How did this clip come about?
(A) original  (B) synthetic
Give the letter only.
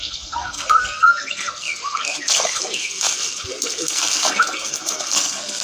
B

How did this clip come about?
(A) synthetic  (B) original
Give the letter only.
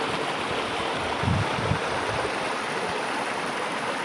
B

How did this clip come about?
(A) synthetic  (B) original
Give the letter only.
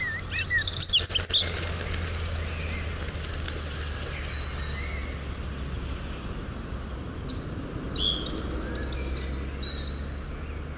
B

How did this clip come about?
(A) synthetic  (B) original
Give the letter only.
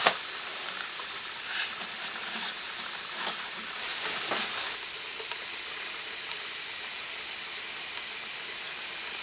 B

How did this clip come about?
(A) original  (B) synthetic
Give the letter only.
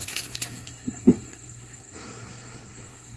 B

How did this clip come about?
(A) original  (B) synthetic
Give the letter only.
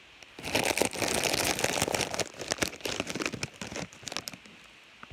A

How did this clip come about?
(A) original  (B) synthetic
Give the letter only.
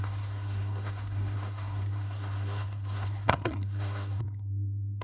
B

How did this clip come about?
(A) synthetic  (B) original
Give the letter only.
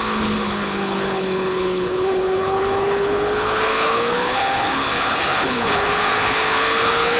A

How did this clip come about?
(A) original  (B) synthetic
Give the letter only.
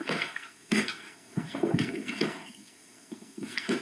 B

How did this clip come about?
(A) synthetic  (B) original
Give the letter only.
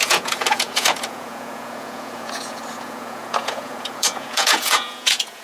A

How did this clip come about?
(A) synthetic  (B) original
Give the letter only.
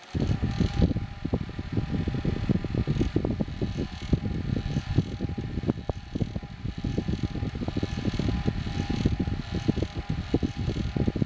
B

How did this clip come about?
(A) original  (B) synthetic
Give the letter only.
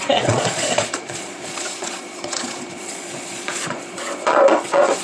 B